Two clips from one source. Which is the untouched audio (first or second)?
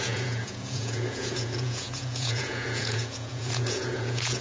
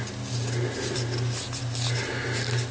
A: second